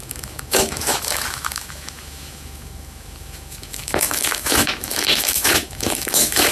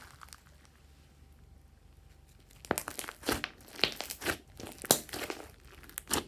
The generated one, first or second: first